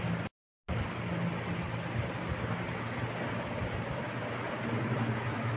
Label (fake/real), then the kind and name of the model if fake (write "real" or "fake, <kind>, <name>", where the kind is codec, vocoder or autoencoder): real